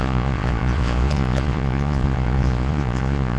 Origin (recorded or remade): remade